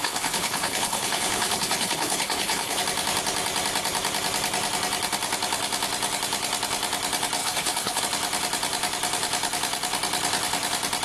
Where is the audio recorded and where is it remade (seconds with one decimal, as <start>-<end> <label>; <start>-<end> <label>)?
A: 0.0-2.8 remade; 2.8-7.4 recorded; 7.4-8.0 remade; 8.0-11.0 recorded